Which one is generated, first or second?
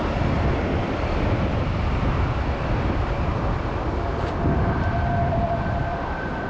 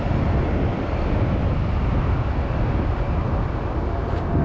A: first